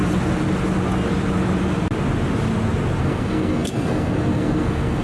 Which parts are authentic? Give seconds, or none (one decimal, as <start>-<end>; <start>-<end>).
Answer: 0.0-3.0